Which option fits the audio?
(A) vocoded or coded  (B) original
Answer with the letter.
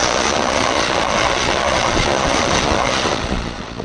A